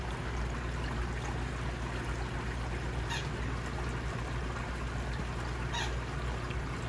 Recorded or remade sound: recorded